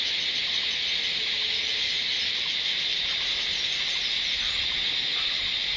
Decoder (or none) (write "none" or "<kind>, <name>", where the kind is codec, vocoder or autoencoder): none